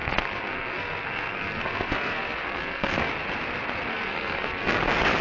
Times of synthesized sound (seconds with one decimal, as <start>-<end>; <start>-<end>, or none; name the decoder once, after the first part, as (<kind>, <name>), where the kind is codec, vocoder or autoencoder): 0.0-3.1 (codec, SNAC); 3.9-4.8